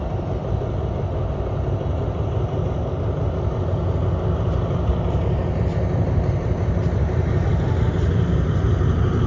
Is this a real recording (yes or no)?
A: yes